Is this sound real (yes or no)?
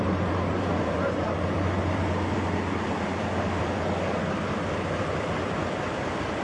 no